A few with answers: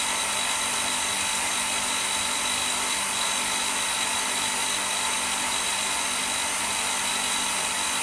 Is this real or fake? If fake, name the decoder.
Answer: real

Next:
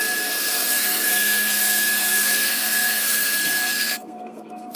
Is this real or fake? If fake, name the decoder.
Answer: fake, codec, SNAC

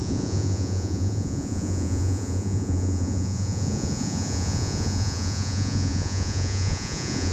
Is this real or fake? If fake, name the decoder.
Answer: fake, vocoder, Vocos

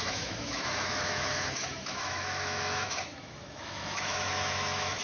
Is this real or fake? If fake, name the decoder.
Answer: fake, autoencoder, DAC-VAE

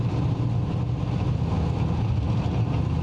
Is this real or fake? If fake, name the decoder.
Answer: real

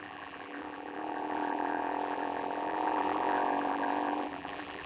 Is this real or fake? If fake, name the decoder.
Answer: fake, vocoder, BigVGAN v2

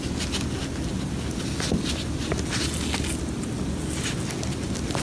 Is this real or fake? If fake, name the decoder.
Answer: real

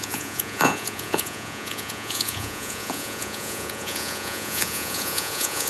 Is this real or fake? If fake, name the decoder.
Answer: fake, vocoder, Vocos